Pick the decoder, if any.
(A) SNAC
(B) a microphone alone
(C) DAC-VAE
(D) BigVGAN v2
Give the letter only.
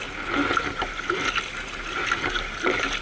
B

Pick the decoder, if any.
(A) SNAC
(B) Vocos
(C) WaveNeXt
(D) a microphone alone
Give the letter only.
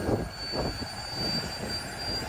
D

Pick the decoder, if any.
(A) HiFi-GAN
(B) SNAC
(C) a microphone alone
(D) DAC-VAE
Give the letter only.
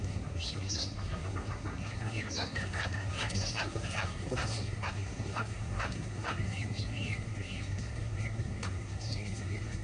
B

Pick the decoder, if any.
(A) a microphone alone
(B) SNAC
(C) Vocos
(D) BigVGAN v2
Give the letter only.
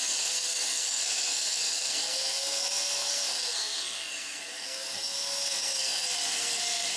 B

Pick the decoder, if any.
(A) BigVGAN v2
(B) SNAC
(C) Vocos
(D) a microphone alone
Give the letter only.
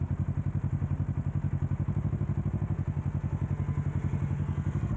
D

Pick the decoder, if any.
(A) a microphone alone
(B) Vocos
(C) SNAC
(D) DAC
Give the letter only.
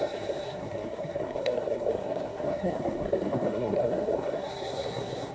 C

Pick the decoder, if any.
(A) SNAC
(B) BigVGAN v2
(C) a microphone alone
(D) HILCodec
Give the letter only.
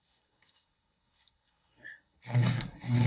A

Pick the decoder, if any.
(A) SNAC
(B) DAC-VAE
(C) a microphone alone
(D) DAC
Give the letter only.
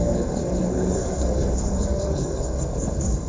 A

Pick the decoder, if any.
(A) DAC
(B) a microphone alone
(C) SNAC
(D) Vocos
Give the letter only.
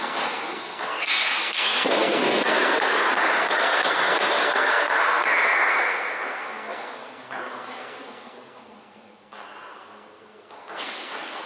C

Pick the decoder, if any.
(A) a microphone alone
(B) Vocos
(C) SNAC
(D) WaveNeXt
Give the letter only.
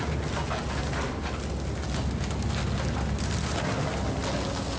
A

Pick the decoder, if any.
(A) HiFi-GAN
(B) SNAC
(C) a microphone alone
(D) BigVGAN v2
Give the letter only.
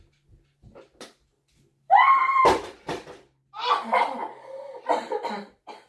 C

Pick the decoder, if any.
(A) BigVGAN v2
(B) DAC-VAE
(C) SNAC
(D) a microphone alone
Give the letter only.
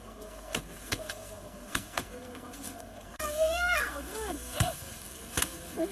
C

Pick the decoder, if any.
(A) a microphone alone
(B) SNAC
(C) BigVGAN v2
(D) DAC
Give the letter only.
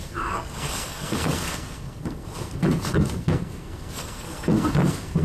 B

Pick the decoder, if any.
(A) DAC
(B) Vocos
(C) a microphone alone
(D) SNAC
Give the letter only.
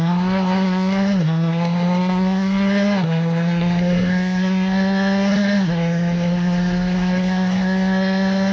D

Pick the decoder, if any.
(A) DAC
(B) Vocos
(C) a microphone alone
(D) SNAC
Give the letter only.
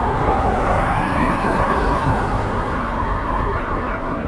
D